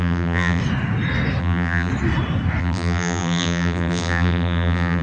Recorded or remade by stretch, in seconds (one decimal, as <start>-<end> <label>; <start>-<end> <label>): 0.0-0.6 remade; 0.6-1.4 recorded; 1.4-1.9 remade; 1.9-2.6 recorded; 2.6-5.0 remade